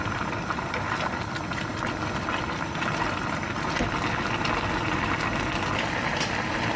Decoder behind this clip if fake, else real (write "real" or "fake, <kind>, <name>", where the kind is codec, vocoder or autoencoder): real